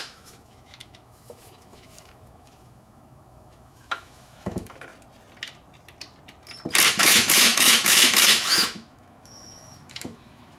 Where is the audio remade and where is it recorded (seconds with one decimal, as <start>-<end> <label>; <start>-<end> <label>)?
0.0-4.9 remade; 4.9-6.9 recorded; 6.9-10.6 remade